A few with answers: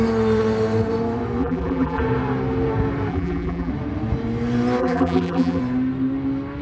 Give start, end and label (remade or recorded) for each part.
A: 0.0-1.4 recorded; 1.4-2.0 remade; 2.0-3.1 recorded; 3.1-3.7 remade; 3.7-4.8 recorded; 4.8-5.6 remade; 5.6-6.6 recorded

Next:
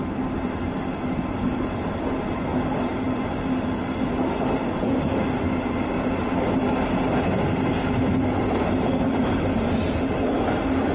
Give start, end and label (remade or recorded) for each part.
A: 0.0-10.9 recorded

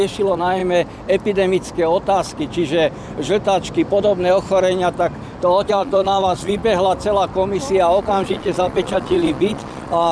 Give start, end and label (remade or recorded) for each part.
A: 0.0-0.6 remade; 0.6-5.7 recorded; 5.7-6.6 remade; 6.6-8.0 recorded; 8.0-10.1 remade

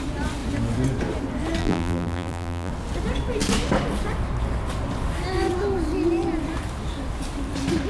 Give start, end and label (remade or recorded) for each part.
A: 0.0-1.6 recorded; 1.6-2.7 remade; 2.7-7.9 recorded

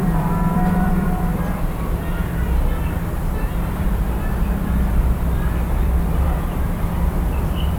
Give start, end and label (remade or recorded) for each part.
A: 0.0-2.2 remade; 2.2-3.6 recorded; 3.6-7.8 remade

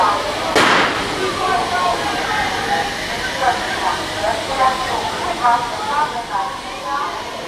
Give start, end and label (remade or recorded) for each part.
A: 0.0-7.5 recorded